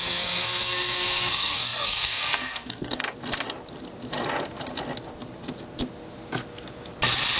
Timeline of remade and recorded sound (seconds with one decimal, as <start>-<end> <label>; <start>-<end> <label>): 0.0-3.0 remade; 3.0-7.4 recorded